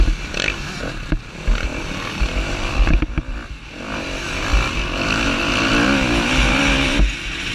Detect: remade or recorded recorded